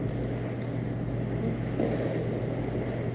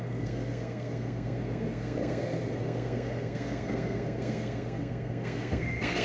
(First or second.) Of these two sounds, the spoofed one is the second